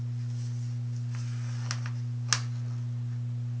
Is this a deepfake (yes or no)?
no